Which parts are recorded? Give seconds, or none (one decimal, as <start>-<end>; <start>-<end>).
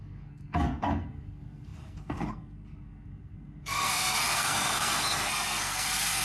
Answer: none